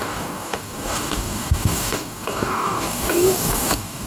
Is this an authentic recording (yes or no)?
no